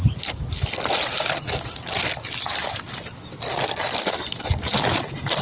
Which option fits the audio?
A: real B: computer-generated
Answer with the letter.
A